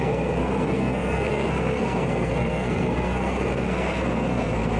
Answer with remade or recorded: remade